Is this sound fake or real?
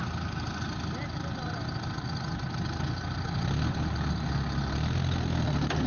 real